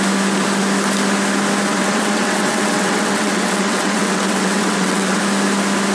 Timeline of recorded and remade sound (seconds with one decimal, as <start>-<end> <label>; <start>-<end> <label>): 0.0-1.7 recorded; 1.7-5.2 remade; 5.2-5.9 recorded